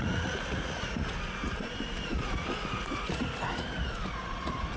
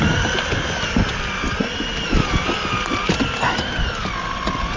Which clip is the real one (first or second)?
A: second